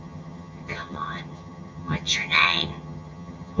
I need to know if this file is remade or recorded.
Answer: remade